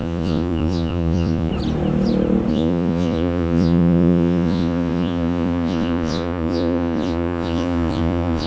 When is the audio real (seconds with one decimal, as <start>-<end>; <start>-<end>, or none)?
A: 1.5-2.5